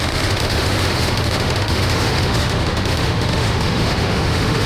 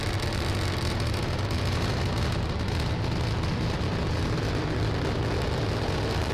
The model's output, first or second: first